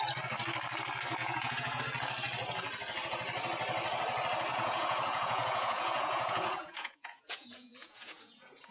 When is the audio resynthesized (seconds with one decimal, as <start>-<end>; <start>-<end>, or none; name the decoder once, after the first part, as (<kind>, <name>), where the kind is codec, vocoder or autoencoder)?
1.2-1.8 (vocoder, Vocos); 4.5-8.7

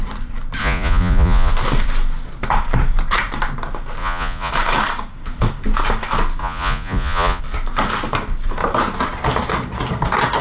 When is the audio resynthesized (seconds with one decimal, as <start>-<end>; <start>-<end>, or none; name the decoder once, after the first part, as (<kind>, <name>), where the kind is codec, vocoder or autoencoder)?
0.6-1.5 (vocoder, Vocos); 4.0-4.5; 6.4-7.4

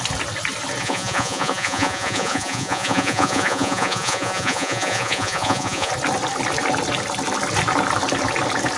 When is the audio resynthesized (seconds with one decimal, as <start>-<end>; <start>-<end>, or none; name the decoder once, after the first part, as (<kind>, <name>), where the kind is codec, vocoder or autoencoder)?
0.8-5.9 (vocoder, Vocos)